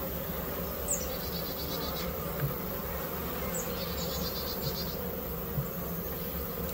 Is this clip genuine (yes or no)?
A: yes